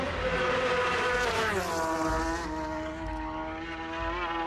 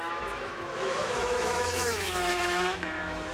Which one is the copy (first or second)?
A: second